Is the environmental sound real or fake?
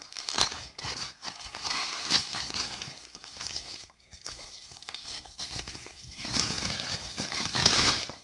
fake